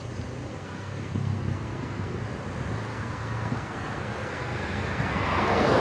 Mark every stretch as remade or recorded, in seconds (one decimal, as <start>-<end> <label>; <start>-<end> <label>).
0.0-0.5 recorded; 0.5-2.2 remade; 2.2-2.9 recorded; 2.9-5.8 remade